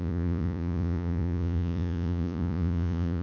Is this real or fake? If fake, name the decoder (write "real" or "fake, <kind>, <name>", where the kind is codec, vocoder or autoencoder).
fake, vocoder, Vocos